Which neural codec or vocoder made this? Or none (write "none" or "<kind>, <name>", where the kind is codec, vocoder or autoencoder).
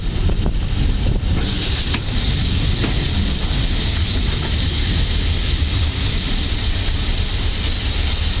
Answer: none